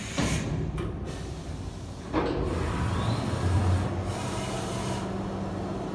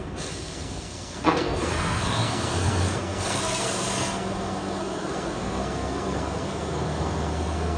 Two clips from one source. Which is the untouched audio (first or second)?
first